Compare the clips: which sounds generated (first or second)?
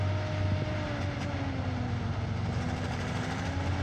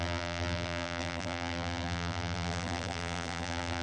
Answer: second